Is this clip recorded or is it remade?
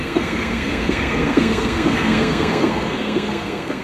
remade